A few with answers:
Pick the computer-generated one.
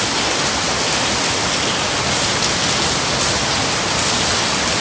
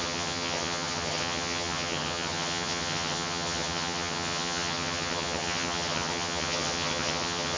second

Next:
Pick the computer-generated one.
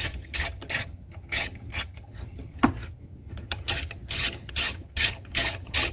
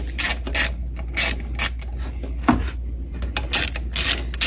first